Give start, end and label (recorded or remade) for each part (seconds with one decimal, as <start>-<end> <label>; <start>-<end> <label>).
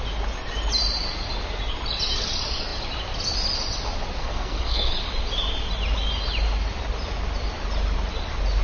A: 0.0-4.2 recorded; 4.2-4.9 remade; 4.9-8.6 recorded